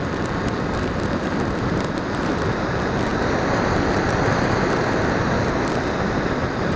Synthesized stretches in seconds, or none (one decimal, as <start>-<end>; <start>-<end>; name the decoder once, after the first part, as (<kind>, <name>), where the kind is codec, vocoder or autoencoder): none